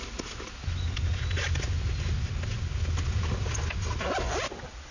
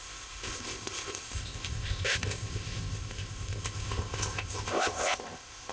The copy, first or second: second